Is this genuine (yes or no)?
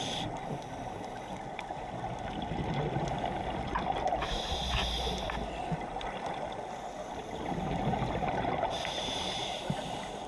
yes